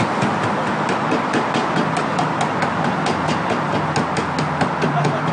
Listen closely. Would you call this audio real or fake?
real